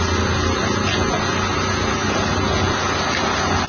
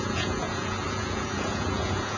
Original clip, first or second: first